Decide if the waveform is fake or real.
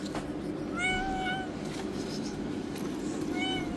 real